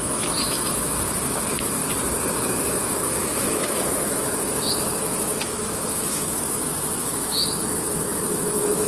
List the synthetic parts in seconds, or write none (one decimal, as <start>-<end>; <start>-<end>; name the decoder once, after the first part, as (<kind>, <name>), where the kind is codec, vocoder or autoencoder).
0.0-1.8 (autoencoder, DAC-VAE); 2.3-8.9